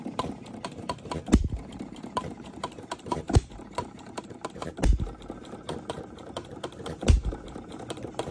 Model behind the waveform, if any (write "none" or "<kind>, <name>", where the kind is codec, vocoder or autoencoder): vocoder, BigVGAN v2